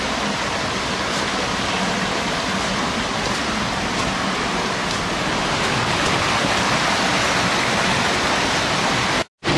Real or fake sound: real